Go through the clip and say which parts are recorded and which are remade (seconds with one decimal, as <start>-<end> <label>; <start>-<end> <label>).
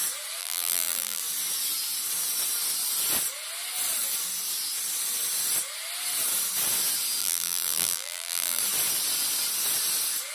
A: 0.0-0.4 recorded; 0.4-1.2 remade; 1.2-7.2 recorded; 7.2-8.6 remade; 8.6-10.3 recorded